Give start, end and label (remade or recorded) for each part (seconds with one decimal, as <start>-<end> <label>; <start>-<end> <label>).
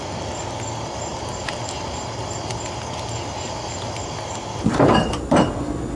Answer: 0.0-6.0 recorded